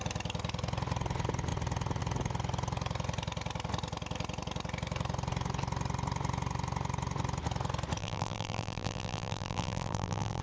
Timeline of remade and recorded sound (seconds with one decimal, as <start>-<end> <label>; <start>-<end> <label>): 0.0-8.0 recorded; 8.0-10.4 remade

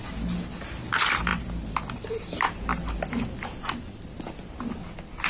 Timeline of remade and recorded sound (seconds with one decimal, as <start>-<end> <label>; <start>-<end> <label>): 0.0-5.3 recorded

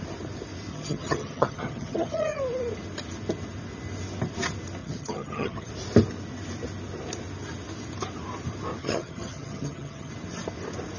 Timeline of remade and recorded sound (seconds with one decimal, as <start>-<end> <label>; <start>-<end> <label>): 0.0-0.7 recorded; 0.7-2.4 remade; 2.4-4.8 recorded; 4.8-5.7 remade; 5.7-8.8 recorded; 8.8-10.1 remade; 10.1-11.0 recorded

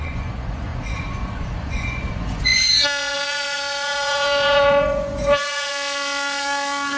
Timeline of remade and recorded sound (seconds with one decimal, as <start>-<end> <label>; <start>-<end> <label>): 0.0-7.0 remade

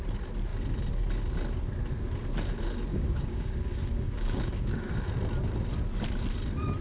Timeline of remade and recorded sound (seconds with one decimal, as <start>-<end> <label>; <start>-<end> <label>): 0.0-2.9 recorded; 2.9-5.0 remade; 5.0-6.8 recorded

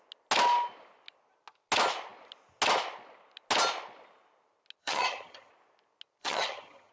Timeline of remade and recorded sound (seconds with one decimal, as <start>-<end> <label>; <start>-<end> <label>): 0.0-4.8 recorded; 4.8-5.5 remade; 5.5-6.2 recorded; 6.2-6.9 remade

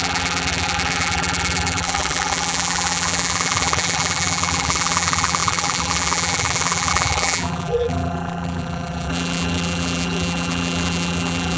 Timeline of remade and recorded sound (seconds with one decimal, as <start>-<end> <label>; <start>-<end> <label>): 0.0-11.6 remade

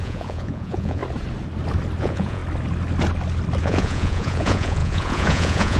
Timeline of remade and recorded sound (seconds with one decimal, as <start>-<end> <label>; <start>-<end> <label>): 0.0-1.0 remade; 1.0-2.0 recorded; 2.0-2.4 remade; 2.4-3.6 recorded; 3.6-5.8 remade